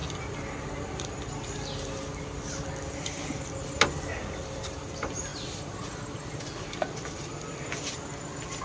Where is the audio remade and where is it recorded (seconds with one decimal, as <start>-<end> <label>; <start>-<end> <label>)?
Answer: 0.0-8.6 recorded